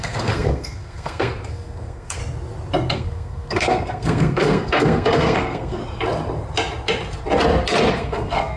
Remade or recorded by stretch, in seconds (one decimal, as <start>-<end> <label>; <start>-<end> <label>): 0.0-2.2 remade; 2.2-2.9 recorded; 2.9-5.8 remade; 5.8-7.9 recorded; 7.9-8.6 remade